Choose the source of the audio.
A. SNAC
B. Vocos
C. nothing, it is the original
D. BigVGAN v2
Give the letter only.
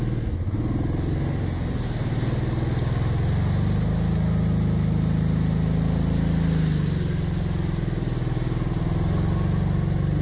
C